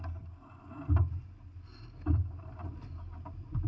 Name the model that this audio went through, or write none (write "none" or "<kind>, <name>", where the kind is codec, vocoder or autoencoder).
none